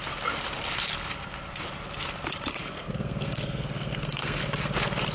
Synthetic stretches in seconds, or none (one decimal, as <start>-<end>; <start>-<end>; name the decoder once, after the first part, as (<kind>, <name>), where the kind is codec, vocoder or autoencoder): 2.5-4.4 (codec, SNAC)